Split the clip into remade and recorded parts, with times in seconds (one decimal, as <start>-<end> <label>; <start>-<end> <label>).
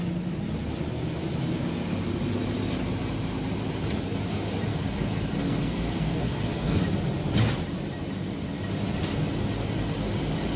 0.0-4.7 recorded; 4.7-6.8 remade; 6.8-10.6 recorded